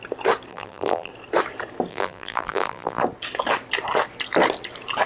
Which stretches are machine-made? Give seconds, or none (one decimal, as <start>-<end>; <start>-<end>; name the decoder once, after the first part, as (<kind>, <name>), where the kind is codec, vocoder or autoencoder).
0.5-1.1 (vocoder, BigVGAN v2); 1.9-3.0